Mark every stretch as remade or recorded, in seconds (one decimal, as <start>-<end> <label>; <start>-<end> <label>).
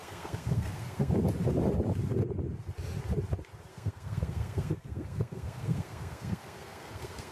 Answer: 0.0-1.1 remade; 1.1-3.7 recorded; 3.7-7.3 remade